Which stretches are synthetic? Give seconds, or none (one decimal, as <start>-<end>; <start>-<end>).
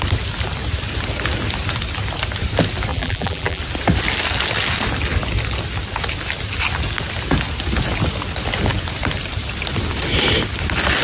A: 2.9-3.6